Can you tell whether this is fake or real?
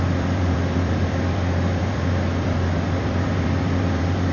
fake